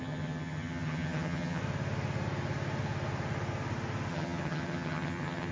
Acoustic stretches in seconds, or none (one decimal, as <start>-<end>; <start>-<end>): 1.6-4.1